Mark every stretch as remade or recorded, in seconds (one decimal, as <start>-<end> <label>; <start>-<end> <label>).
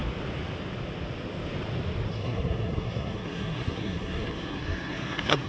0.0-2.1 recorded; 2.1-5.5 remade